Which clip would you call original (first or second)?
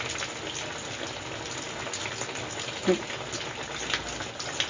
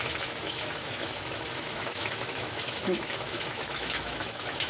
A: first